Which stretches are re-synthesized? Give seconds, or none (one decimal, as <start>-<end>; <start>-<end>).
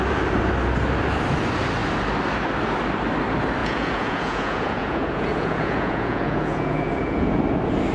3.6-7.4